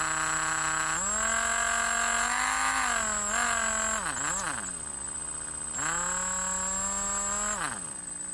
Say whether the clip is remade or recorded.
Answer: recorded